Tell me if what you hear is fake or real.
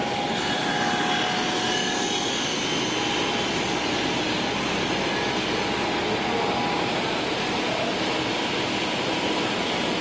real